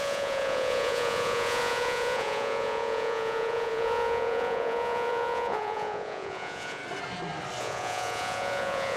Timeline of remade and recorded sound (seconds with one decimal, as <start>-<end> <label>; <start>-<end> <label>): 0.0-6.8 remade; 6.8-7.6 recorded; 7.6-9.0 remade